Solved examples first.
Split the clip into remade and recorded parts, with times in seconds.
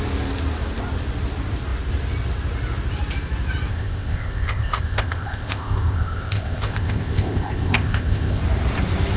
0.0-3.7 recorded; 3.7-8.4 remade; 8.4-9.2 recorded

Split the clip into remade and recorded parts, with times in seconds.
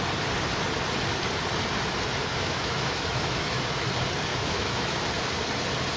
0.0-2.3 recorded; 2.3-3.9 remade; 3.9-4.3 recorded; 4.3-5.1 remade; 5.1-6.0 recorded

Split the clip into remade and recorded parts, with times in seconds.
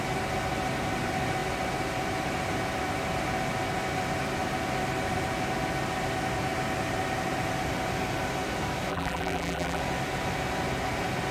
0.0-8.9 recorded; 8.9-9.8 remade; 9.8-11.3 recorded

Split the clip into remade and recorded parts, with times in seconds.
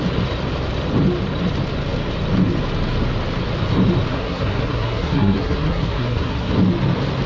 0.0-4.1 recorded; 4.1-6.5 remade; 6.5-7.3 recorded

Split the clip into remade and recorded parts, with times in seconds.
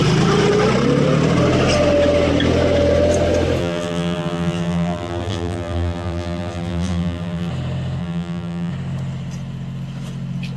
0.0-3.6 recorded; 3.6-7.5 remade; 7.5-8.0 recorded; 8.0-8.7 remade; 8.7-10.6 recorded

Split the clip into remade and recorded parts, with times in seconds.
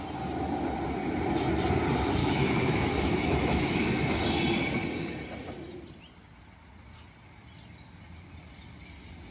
0.0-2.2 recorded; 2.2-4.2 remade; 4.2-9.3 recorded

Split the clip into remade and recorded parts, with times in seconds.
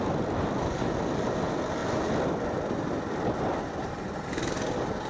0.0-1.8 recorded; 1.8-2.9 remade; 2.9-3.5 recorded; 3.5-4.3 remade; 4.3-5.1 recorded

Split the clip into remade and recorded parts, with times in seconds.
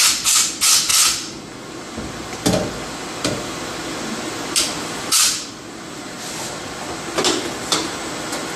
0.0-8.6 recorded